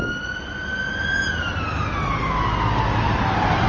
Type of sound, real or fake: real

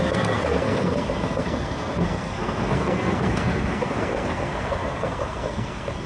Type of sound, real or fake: fake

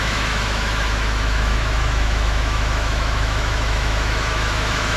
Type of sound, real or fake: fake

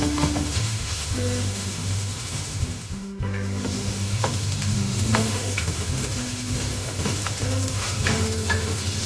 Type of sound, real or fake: fake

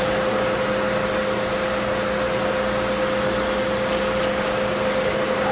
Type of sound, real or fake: real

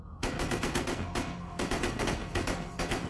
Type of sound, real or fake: fake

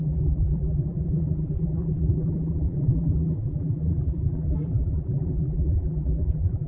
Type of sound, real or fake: fake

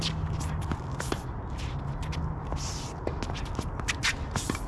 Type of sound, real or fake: real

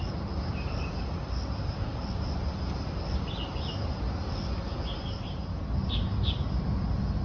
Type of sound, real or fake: real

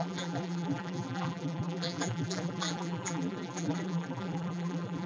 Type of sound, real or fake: fake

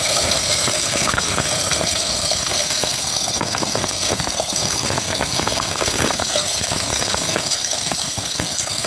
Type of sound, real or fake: fake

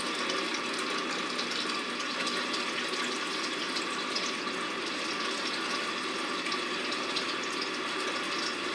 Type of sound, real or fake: real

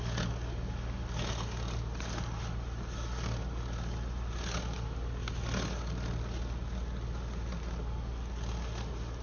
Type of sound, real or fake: real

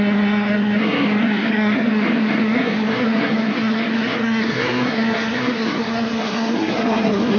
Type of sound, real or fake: fake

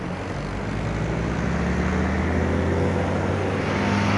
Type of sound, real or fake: real